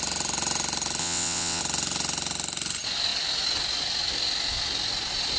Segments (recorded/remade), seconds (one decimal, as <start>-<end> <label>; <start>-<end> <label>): 0.0-1.0 recorded; 1.0-1.6 remade; 1.6-5.4 recorded

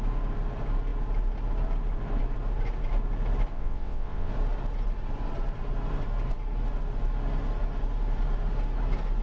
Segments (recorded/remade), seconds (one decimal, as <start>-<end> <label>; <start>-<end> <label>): 0.0-3.5 recorded; 3.5-4.3 remade; 4.3-9.2 recorded

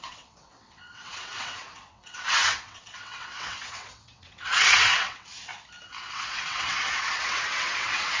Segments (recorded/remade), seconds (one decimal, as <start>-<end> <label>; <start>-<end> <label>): 0.0-5.5 remade; 5.5-6.0 recorded; 6.0-8.2 remade

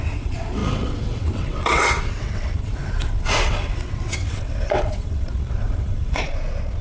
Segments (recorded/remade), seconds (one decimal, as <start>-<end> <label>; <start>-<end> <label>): 0.0-6.2 remade; 6.2-6.8 recorded

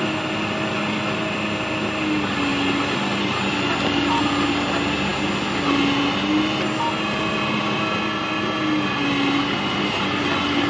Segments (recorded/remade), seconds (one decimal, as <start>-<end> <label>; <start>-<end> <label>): 0.0-10.7 recorded

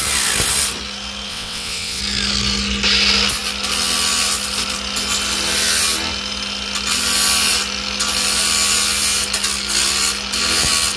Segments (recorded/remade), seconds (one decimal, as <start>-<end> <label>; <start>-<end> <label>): 0.0-1.3 recorded; 1.3-2.0 remade; 2.0-11.0 recorded